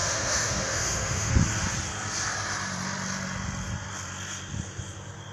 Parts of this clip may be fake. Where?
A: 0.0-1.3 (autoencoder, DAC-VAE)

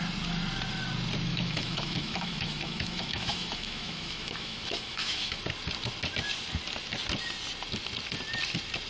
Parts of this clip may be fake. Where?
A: 1.3-5.4 (autoencoder, DAC-VAE)

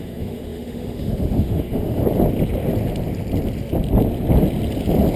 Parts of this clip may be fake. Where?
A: 0.0-2.0 (autoencoder, DAC-VAE)